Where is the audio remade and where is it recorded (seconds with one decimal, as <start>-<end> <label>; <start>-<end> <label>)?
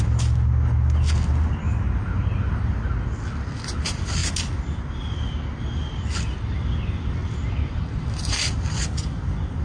0.0-9.6 recorded